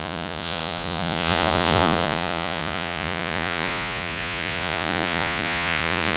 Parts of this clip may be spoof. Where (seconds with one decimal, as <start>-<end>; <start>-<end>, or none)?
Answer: 0.0-6.2